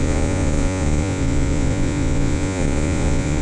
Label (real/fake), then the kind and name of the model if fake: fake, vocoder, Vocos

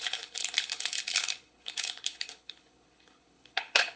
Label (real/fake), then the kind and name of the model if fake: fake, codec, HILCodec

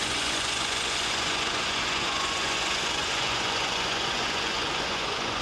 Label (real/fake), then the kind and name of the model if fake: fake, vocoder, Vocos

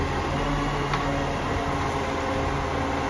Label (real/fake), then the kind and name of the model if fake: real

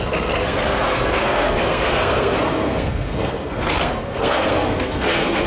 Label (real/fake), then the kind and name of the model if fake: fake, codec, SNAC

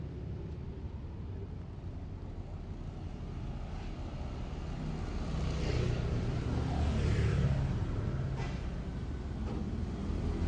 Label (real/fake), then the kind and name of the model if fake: real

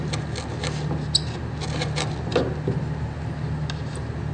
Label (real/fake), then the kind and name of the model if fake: real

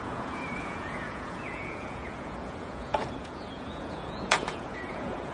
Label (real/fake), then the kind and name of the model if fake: fake, vocoder, Vocos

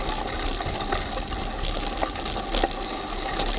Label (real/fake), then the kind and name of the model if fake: real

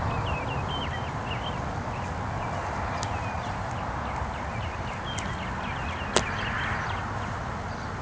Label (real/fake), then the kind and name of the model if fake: real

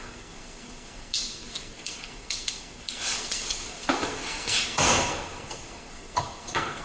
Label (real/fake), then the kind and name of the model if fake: fake, codec, SNAC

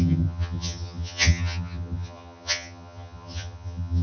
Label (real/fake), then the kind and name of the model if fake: fake, vocoder, HiFi-GAN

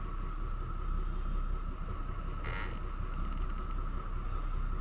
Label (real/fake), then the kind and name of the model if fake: real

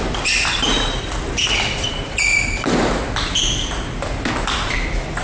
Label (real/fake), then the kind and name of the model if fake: real